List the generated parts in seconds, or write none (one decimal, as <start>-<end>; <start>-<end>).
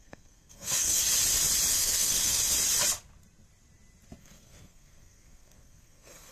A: 0.0-1.0; 1.7-2.4; 4.2-6.3